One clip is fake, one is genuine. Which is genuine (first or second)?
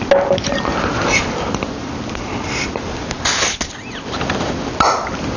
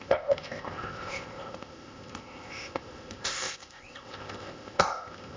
first